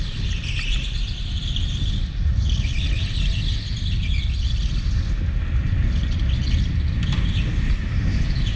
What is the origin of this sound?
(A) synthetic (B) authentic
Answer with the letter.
B